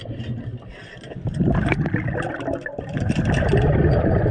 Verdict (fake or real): real